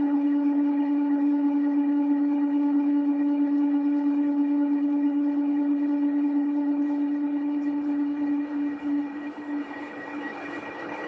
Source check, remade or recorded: remade